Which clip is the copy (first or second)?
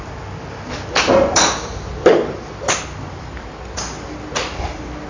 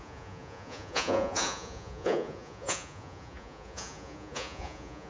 second